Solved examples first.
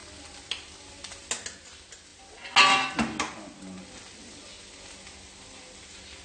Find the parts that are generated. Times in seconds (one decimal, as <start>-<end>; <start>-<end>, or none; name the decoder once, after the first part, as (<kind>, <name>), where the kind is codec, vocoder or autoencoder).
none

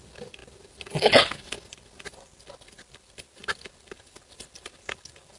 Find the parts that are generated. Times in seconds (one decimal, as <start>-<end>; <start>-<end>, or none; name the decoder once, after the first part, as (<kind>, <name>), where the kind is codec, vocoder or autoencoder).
none

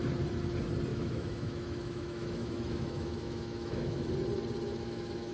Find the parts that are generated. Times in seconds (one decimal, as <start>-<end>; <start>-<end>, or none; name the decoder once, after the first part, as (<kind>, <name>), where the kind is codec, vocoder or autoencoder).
0.9-4.1 (autoencoder, DAC-VAE); 4.7-5.3